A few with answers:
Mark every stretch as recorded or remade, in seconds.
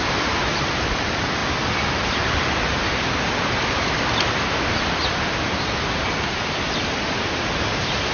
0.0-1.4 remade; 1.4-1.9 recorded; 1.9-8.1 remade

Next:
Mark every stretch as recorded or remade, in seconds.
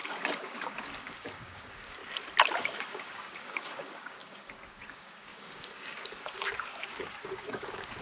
0.0-2.0 remade; 2.0-2.6 recorded; 2.6-8.0 remade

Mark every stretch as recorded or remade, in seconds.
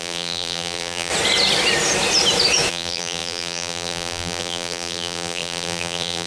0.0-1.1 remade; 1.1-2.7 recorded; 2.7-6.3 remade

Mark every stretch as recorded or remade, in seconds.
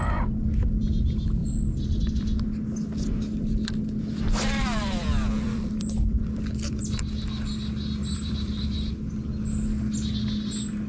0.0-1.4 recorded; 1.4-2.5 remade; 2.5-4.6 recorded; 4.6-6.8 remade; 6.8-8.0 recorded; 8.0-8.9 remade; 8.9-10.9 recorded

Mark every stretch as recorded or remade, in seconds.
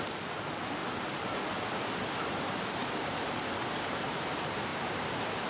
0.0-0.8 remade; 0.8-2.2 recorded; 2.2-2.8 remade; 2.8-3.9 recorded; 3.9-5.5 remade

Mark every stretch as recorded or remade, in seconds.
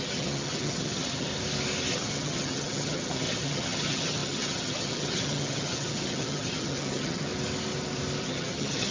0.0-1.3 remade; 1.3-1.9 recorded; 1.9-7.3 remade; 7.3-8.2 recorded; 8.2-8.9 remade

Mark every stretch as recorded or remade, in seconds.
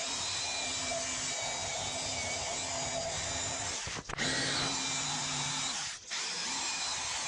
0.0-0.9 remade; 0.9-5.0 recorded; 5.0-7.3 remade